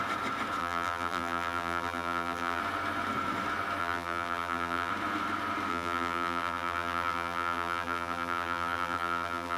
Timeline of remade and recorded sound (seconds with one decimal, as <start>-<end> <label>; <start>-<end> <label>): 0.0-0.6 recorded; 0.6-2.6 remade; 2.6-3.8 recorded; 3.8-4.9 remade; 4.9-5.7 recorded; 5.7-9.6 remade